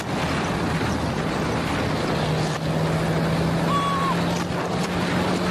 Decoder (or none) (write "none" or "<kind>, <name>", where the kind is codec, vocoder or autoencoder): none